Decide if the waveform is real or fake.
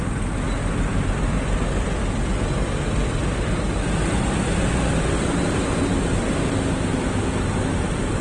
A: real